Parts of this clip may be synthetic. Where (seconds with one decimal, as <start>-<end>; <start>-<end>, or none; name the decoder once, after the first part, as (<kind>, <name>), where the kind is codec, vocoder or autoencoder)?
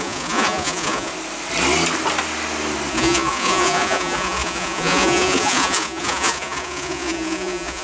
0.0-1.1 (vocoder, Vocos); 2.9-7.8